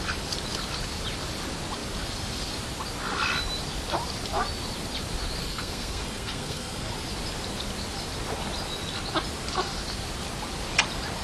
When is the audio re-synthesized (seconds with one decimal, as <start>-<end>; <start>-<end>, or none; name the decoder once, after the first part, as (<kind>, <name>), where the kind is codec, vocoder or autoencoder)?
5.4-6.9 (codec, SNAC)